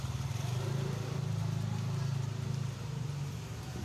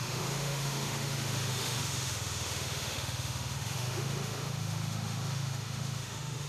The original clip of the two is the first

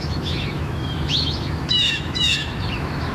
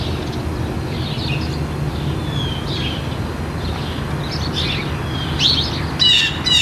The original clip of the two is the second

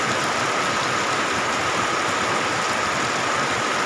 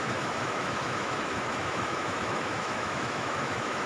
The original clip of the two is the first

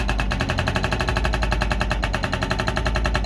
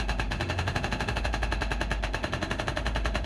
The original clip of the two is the first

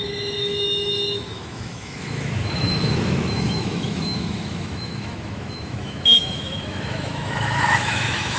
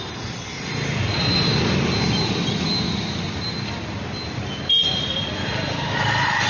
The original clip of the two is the second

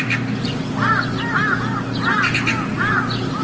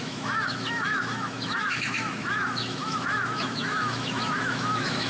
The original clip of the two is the first